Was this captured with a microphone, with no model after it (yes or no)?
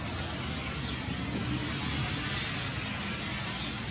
yes